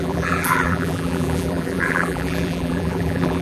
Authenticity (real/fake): fake